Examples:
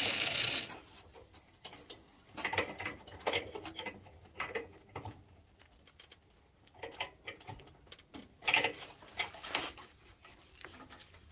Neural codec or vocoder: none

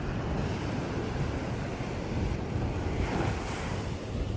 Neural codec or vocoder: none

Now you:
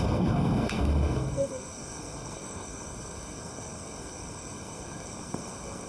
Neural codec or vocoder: codec, SNAC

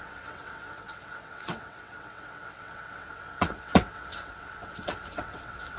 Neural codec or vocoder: vocoder, WaveNeXt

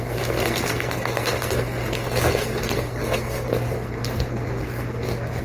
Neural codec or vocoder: codec, SNAC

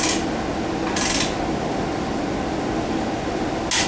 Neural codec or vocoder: none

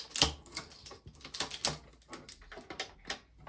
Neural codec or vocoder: none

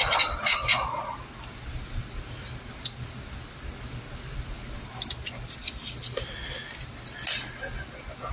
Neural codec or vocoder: none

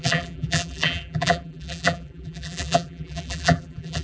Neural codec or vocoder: vocoder, BigVGAN v2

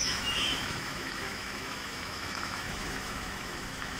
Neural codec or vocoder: autoencoder, DAC-VAE